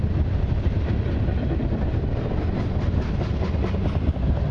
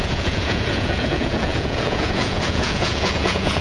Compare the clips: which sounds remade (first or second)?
second